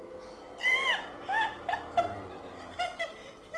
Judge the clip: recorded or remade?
remade